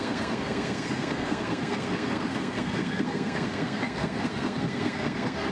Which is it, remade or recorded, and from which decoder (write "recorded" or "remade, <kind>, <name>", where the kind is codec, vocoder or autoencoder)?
remade, codec, SNAC